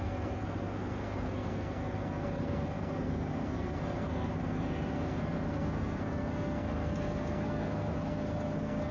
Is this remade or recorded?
remade